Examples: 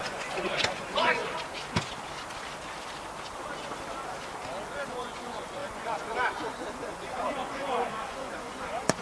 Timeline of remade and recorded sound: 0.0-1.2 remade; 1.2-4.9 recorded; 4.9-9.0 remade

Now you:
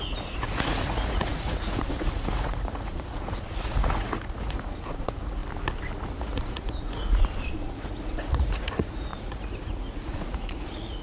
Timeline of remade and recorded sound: 0.0-5.4 remade; 5.4-6.2 recorded; 6.2-11.0 remade

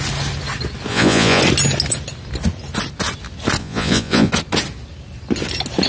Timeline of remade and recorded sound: 0.0-0.9 recorded; 0.9-1.4 remade; 1.4-3.6 recorded; 3.6-4.3 remade; 4.3-5.9 recorded

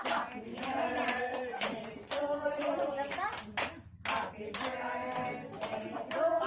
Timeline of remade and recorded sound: 0.0-0.5 recorded; 0.5-2.6 remade; 2.6-6.5 recorded

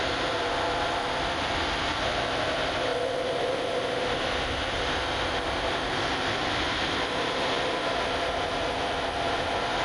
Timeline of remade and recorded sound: 0.0-9.8 recorded

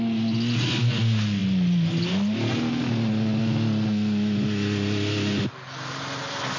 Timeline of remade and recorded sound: 0.0-6.6 recorded

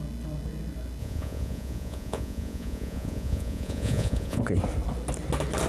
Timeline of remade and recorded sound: 0.0-1.0 recorded; 1.0-4.4 remade; 4.4-5.7 recorded

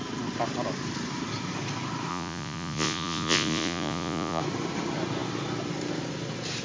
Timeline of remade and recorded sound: 0.0-2.1 recorded; 2.1-4.4 remade; 4.4-6.6 recorded